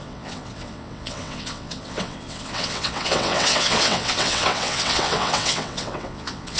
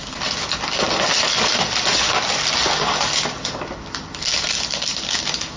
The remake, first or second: first